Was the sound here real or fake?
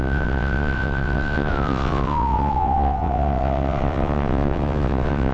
fake